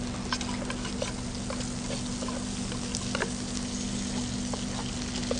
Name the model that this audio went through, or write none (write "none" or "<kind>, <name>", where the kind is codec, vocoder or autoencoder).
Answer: none